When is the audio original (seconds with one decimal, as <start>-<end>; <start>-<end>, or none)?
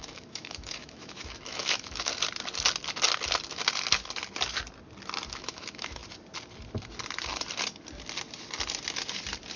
2.1-5.3; 6.0-9.6